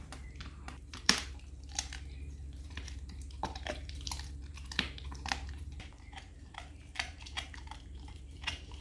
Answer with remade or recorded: remade